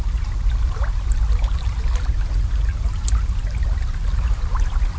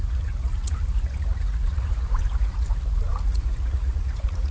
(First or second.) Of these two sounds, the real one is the first